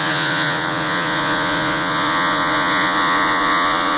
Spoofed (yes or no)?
yes